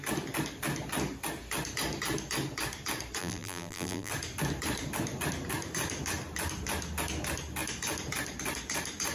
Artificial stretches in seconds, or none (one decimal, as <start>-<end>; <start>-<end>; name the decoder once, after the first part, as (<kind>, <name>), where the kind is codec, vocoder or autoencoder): 3.2-4.1 (vocoder, BigVGAN v2)